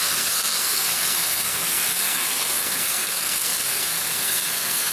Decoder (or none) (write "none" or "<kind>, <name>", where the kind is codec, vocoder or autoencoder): codec, SNAC